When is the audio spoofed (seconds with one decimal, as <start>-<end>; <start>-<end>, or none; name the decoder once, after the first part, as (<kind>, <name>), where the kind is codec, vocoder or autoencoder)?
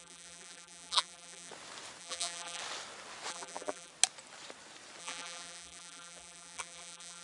0.0-1.5 (vocoder, BigVGAN v2); 2.0-2.6; 3.3-3.9; 5.0-7.2